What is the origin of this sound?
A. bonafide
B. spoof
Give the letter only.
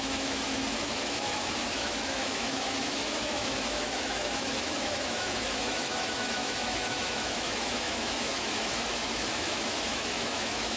B